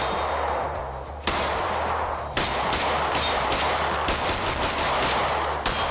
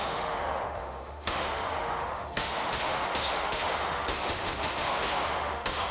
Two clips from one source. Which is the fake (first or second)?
second